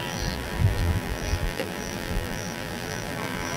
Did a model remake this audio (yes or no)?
yes